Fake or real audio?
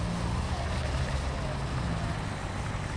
real